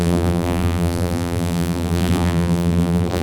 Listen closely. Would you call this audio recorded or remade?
remade